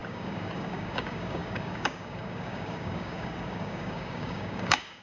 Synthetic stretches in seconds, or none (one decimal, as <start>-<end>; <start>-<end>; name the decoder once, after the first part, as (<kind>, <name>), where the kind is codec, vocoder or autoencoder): 0.0-5.0 (codec, DAC)